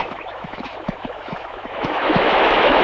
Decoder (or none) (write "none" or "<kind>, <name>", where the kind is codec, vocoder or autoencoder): autoencoder, DAC-VAE